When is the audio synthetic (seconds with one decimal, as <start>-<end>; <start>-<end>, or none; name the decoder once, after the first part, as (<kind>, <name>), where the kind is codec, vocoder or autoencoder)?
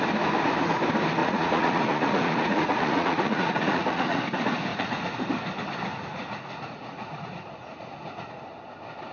1.2-4.2 (vocoder, Vocos); 4.7-5.2; 5.9-8.4